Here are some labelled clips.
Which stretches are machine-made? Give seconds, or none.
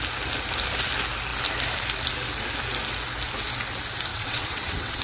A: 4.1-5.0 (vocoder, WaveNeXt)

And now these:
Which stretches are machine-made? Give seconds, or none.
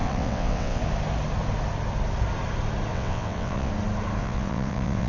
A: 0.0-0.8 (vocoder, WaveNeXt); 2.9-3.7; 4.2-5.1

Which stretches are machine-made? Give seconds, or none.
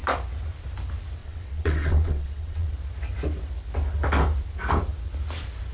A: 1.2-2.7 (vocoder, WaveNeXt)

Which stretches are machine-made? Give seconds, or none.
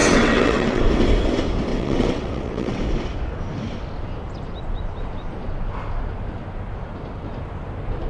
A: 0.0-0.8 (vocoder, WaveNeXt); 1.7-2.8